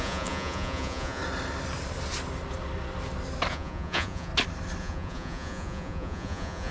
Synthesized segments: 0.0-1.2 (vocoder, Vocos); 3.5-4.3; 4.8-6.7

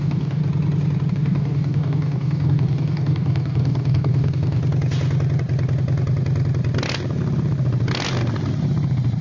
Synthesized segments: 0.0-0.4 (codec, DAC); 1.1-4.6

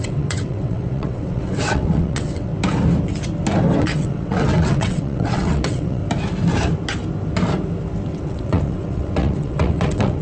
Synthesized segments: 0.0-2.5 (vocoder, WaveNeXt); 3.8-6.0; 8.1-10.2

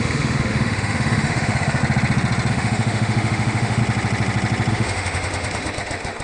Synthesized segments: 0.0-1.8 (autoencoder, DAC-VAE); 2.5-3.8; 4.7-6.2